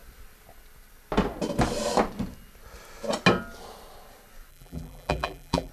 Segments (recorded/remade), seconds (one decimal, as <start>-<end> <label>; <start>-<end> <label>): 0.0-4.5 recorded; 4.5-5.7 remade